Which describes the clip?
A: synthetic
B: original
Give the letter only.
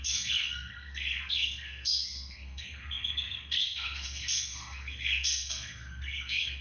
A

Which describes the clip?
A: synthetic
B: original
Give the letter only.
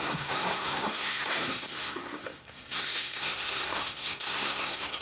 A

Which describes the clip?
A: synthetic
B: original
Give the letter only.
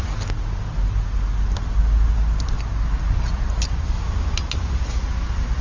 B